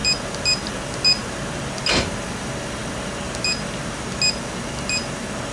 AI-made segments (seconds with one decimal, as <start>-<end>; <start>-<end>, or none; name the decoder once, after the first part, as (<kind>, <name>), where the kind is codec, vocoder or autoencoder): none